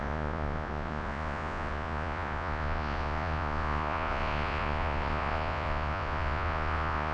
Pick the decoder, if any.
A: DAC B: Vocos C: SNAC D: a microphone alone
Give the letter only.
B